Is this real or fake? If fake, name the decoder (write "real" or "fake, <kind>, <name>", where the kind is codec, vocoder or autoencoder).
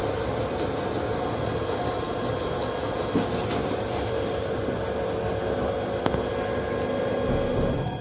real